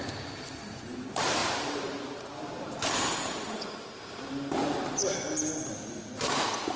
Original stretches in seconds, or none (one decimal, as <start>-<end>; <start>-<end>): 5.0-6.8